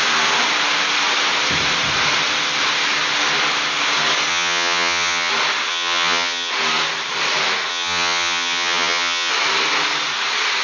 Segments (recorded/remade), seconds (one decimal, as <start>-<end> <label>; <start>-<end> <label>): 0.0-4.3 recorded; 4.3-5.3 remade; 5.3-5.7 recorded; 5.7-6.5 remade; 6.5-7.7 recorded; 7.7-9.3 remade; 9.3-10.6 recorded